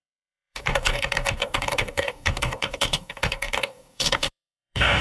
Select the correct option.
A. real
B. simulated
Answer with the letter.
B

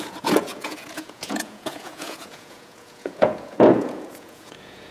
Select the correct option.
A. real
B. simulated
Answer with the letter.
B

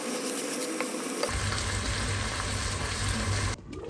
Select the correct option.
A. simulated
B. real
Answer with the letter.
B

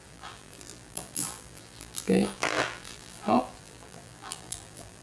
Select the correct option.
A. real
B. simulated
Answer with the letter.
B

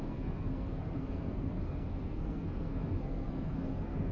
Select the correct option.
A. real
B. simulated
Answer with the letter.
B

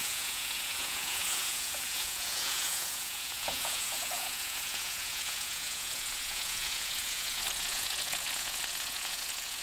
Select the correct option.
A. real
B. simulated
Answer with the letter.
B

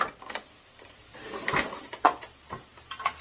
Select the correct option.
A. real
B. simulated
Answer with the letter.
A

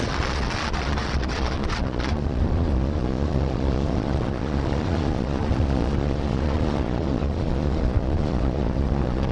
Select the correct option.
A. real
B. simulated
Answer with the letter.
B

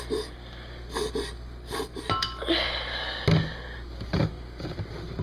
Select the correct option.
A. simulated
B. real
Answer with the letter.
B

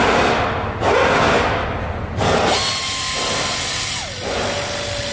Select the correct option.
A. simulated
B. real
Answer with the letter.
B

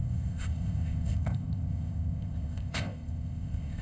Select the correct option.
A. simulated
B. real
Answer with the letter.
A